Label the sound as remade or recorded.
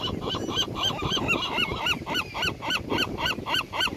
remade